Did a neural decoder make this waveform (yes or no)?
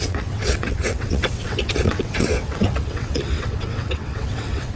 yes